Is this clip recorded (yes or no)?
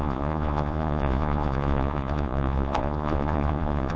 no